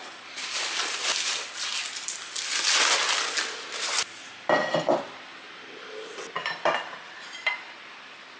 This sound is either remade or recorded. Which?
recorded